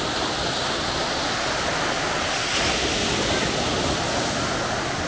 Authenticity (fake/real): real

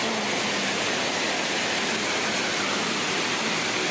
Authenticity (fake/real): real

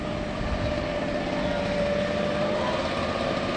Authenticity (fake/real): real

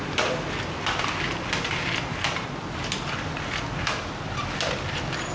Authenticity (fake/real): real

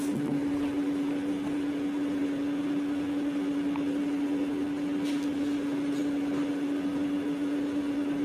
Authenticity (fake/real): real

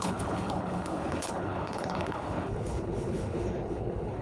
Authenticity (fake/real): fake